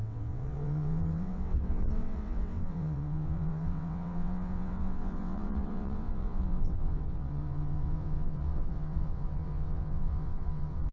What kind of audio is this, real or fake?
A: fake